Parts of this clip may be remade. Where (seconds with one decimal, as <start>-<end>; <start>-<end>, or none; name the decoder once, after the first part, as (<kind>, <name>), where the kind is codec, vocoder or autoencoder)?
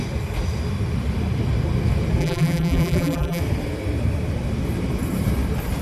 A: 2.2-3.4 (vocoder, BigVGAN v2)